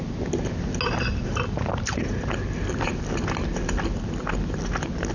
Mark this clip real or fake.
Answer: real